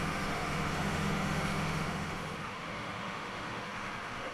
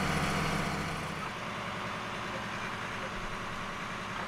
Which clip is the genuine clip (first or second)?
second